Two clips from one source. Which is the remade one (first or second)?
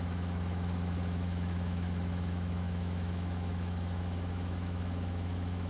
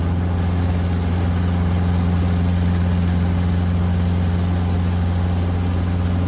first